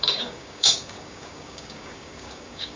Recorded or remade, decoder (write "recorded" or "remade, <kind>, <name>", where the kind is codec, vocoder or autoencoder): remade, codec, DAC